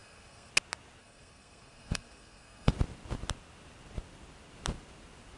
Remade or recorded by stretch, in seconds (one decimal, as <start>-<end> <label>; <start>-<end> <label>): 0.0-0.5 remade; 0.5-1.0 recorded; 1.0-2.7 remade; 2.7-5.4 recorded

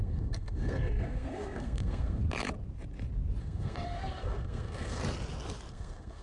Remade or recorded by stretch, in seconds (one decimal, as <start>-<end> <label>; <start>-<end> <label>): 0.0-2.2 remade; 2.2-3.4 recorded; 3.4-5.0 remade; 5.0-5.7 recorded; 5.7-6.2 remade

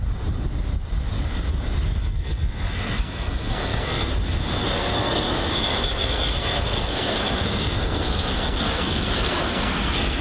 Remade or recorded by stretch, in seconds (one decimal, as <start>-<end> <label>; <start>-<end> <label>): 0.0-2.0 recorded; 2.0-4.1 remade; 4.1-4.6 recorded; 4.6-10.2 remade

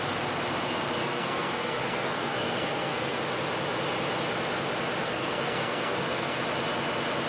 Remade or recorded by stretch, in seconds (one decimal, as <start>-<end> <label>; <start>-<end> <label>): 0.0-1.0 recorded; 1.0-3.2 remade; 3.2-5.0 recorded; 5.0-6.4 remade; 6.4-7.3 recorded